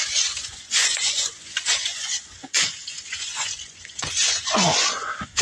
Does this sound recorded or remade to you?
remade